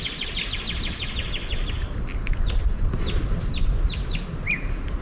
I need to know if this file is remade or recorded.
recorded